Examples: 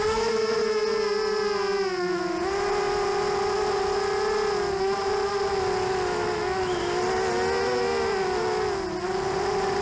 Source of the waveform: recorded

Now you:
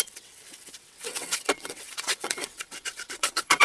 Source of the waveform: remade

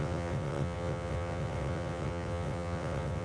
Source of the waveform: remade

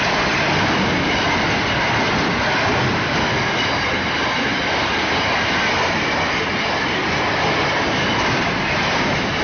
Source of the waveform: recorded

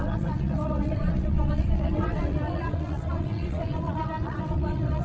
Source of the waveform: remade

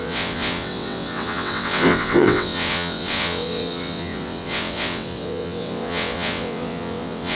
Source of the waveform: remade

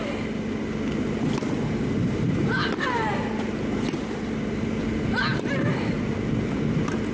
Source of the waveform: recorded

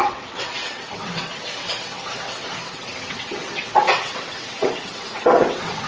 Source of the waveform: remade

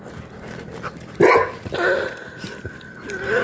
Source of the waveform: recorded